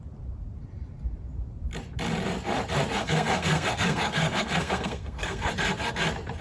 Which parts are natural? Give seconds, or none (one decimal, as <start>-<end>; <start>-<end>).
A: 0.0-3.0; 5.5-6.4